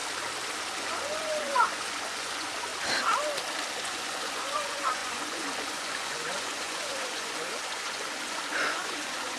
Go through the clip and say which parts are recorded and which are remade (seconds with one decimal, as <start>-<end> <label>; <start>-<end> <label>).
0.0-0.8 recorded; 0.8-2.7 remade; 2.7-3.8 recorded; 3.8-9.4 remade